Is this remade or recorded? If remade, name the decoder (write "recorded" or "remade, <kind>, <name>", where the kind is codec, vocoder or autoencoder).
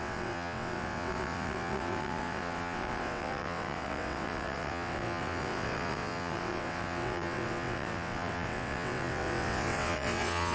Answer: remade, vocoder, WaveNeXt